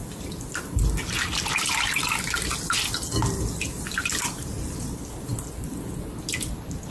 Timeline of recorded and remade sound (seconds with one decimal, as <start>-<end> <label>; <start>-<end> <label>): 0.0-6.9 recorded